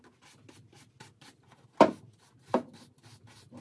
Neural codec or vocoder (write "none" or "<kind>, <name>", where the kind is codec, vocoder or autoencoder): none